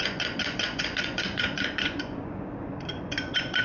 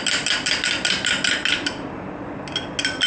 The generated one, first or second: first